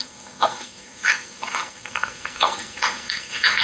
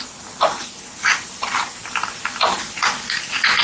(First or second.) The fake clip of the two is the first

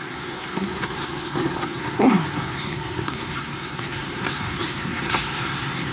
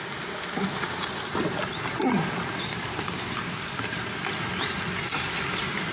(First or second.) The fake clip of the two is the first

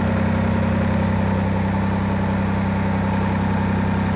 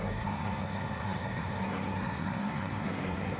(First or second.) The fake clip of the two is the second